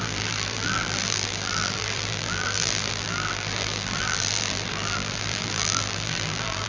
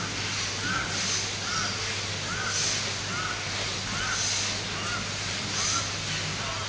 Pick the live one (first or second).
second